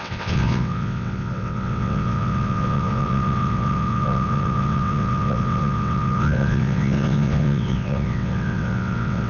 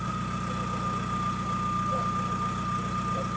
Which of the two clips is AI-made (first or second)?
first